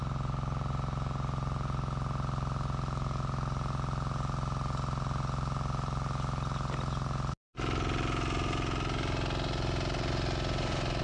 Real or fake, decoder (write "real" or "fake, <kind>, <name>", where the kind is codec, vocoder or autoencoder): real